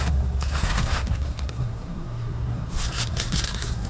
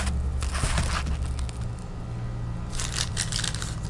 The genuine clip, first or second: second